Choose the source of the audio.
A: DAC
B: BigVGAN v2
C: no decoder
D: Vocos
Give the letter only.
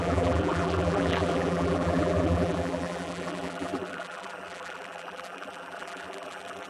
B